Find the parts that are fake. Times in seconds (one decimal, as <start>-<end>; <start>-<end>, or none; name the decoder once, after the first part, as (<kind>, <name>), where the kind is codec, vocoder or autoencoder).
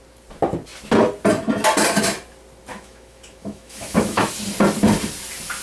2.7-4.3 (autoencoder, DAC-VAE)